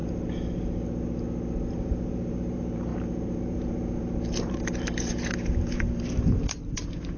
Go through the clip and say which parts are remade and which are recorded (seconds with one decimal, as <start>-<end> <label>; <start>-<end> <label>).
0.0-1.7 recorded; 1.7-7.2 remade